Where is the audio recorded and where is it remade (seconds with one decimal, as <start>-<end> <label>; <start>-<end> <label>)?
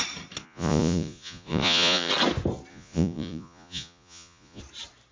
0.0-0.4 recorded; 0.4-2.1 remade; 2.1-2.7 recorded; 2.7-4.6 remade; 4.6-5.1 recorded